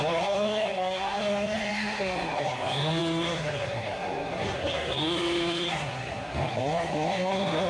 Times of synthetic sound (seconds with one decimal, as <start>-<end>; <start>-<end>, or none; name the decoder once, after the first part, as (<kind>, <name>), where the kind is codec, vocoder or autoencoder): 0.0-7.7 (codec, SNAC)